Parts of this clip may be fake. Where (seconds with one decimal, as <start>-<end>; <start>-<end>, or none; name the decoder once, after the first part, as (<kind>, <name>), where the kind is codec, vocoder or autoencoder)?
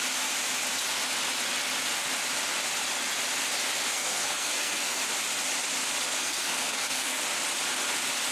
3.9-5.0 (codec, SNAC); 6.1-7.2